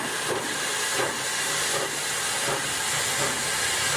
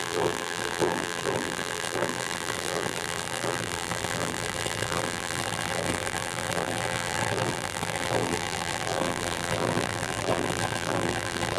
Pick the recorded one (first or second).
first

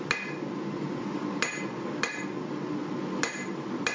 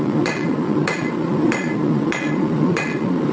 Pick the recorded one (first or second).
first